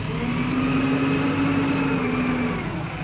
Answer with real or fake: real